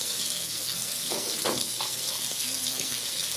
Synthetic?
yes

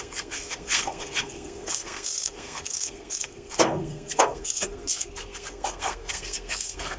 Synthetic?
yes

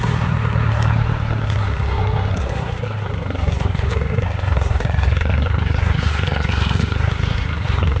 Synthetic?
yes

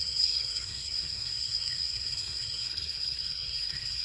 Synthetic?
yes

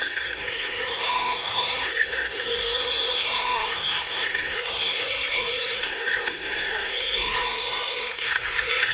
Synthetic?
yes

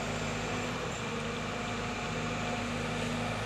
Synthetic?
no